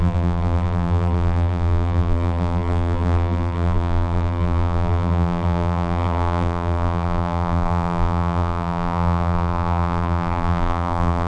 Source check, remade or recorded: remade